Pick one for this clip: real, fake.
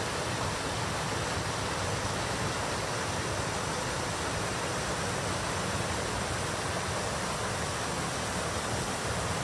real